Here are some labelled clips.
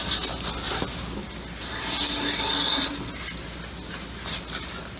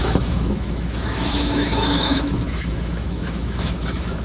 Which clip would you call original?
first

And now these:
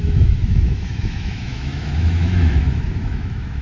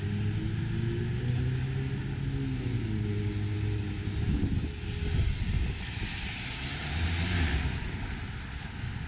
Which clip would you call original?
second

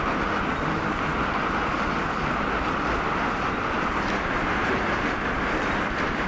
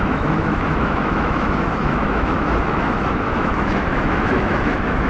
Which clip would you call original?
first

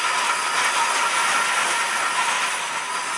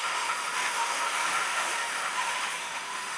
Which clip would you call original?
first